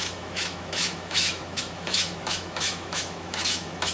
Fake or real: fake